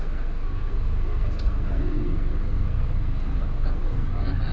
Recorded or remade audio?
remade